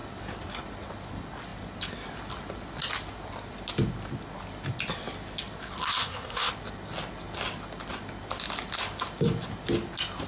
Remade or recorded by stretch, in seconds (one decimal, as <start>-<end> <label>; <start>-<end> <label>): 0.0-6.0 recorded; 6.0-6.5 remade; 6.5-10.3 recorded